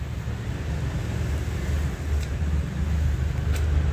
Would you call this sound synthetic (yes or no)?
no